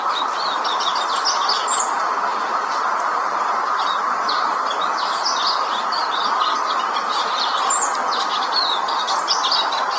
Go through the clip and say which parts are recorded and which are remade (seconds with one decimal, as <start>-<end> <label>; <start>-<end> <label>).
0.0-10.0 recorded